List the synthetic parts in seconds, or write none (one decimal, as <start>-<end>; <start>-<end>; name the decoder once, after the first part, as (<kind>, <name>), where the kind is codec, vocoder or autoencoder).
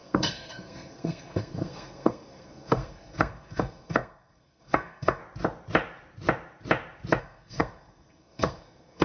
0.0-5.2 (codec, SNAC); 7.2-9.0